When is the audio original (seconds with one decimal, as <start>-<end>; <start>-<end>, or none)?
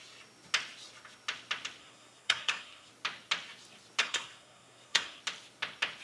0.0-1.8; 2.9-4.0; 5.2-6.0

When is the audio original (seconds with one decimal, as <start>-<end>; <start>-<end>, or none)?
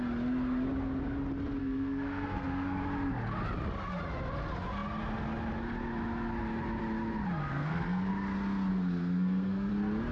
0.0-1.6; 2.8-7.4; 8.1-8.7; 9.7-10.1